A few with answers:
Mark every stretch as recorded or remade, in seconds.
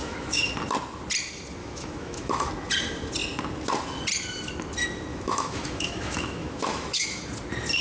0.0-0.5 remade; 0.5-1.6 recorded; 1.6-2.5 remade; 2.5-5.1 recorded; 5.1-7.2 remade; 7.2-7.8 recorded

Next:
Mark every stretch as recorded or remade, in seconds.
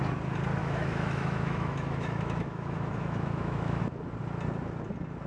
0.0-0.6 recorded; 0.6-3.8 remade; 3.8-5.3 recorded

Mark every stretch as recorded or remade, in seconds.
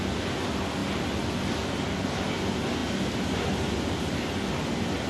0.0-5.1 recorded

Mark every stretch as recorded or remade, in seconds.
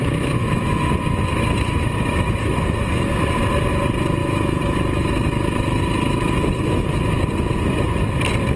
0.0-0.9 remade; 0.9-1.3 recorded; 1.3-3.2 remade; 3.2-4.2 recorded; 4.2-7.2 remade; 7.2-8.6 recorded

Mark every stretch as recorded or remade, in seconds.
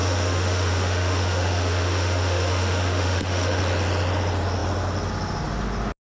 0.0-3.6 remade; 3.6-6.1 recorded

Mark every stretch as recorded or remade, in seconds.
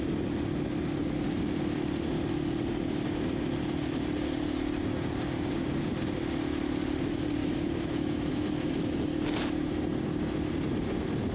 0.0-7.4 recorded; 7.4-8.7 remade; 8.7-11.3 recorded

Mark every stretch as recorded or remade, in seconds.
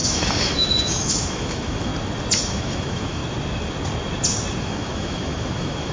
0.0-1.9 remade; 1.9-2.5 recorded; 2.5-3.2 remade; 3.2-4.6 recorded; 4.6-5.9 remade